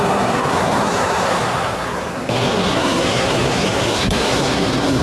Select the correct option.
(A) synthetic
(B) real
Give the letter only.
A